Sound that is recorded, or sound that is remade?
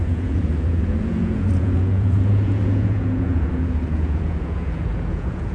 remade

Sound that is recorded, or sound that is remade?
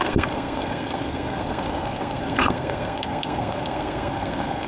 remade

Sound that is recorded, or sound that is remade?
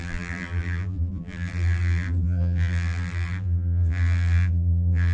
remade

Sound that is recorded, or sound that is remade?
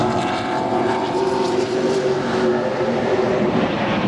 remade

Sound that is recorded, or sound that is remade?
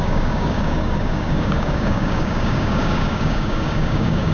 remade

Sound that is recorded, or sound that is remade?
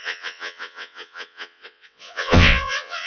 remade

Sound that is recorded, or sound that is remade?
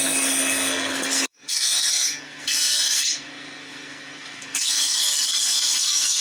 remade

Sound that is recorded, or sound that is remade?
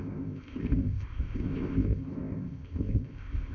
remade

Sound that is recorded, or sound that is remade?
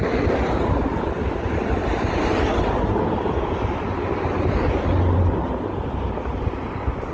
recorded